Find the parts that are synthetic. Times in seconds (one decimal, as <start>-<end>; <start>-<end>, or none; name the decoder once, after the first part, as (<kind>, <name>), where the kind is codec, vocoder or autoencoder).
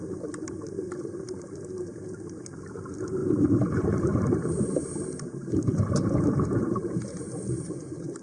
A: 3.2-8.2 (vocoder, BigVGAN v2)